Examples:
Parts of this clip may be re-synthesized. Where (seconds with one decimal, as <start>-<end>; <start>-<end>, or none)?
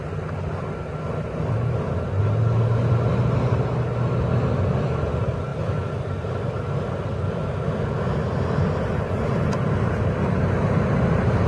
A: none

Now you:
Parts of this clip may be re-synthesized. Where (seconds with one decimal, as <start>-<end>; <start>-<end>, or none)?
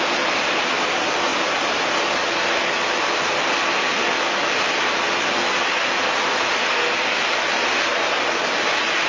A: none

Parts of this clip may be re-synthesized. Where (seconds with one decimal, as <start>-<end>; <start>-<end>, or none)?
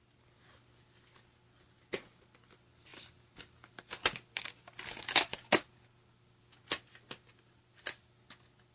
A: none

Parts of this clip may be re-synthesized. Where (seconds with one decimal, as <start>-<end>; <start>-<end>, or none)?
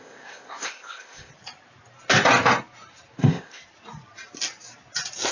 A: 0.0-1.3; 3.2-3.6